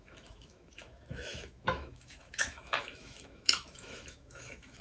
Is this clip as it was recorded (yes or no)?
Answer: no